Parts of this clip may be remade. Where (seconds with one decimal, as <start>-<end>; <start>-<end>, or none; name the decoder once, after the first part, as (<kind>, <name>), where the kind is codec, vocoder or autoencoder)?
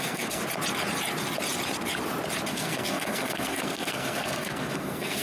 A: 0.0-0.4 (codec, SNAC); 2.5-5.2